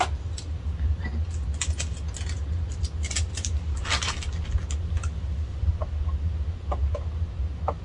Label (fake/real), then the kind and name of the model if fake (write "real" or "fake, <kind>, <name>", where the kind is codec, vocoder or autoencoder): real